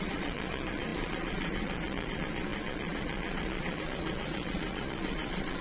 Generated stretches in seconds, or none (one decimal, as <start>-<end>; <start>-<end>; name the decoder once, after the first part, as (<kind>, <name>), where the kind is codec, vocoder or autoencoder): 0.0-5.6 (vocoder, Vocos)